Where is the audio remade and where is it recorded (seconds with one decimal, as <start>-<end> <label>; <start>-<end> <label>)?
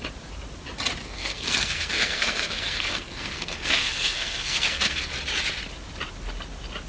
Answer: 0.0-1.0 recorded; 1.0-5.1 remade; 5.1-6.9 recorded